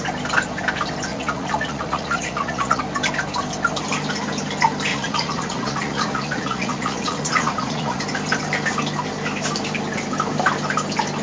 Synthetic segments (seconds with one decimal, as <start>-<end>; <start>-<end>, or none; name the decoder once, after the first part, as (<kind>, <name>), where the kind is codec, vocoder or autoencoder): 1.1-2.8 (vocoder, Vocos); 4.9-8.0